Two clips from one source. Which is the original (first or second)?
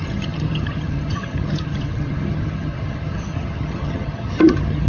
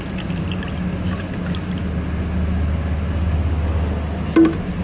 second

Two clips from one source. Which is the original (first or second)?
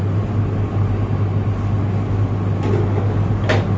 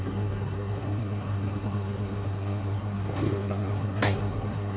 first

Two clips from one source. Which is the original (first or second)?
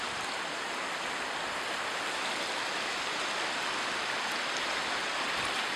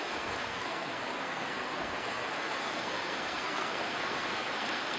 first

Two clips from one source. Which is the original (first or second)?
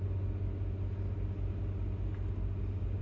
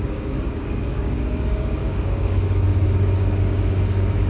first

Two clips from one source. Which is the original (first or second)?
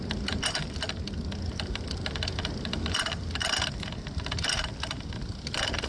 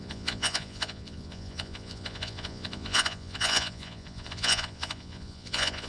first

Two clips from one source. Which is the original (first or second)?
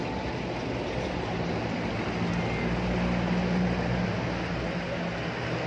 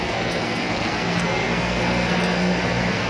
first